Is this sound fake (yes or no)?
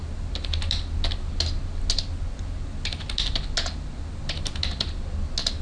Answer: no